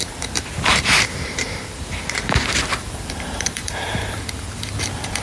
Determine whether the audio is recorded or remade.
remade